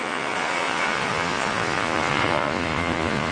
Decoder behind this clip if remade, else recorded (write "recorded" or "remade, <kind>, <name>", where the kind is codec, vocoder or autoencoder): remade, vocoder, Vocos